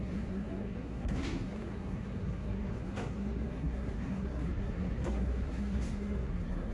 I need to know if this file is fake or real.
fake